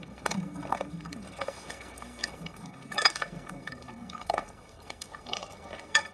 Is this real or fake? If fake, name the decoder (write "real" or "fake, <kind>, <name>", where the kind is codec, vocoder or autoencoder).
fake, codec, SNAC